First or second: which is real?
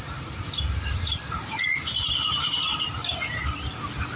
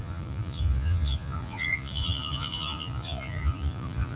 first